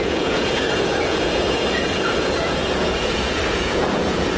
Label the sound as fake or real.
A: fake